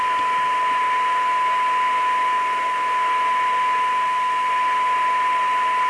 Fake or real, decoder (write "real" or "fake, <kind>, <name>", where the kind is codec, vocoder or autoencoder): real